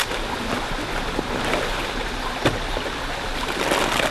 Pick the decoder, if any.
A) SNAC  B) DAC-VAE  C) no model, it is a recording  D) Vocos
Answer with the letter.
C